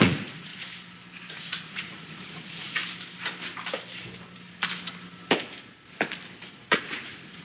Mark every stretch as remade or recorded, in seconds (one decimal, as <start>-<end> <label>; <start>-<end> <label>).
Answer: 0.0-0.5 remade; 0.5-1.3 recorded; 1.3-2.8 remade; 2.8-6.5 recorded; 6.5-7.4 remade